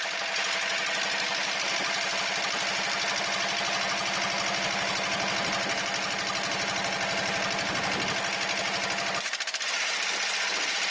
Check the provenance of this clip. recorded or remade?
recorded